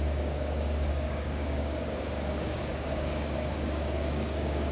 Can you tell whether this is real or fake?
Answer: fake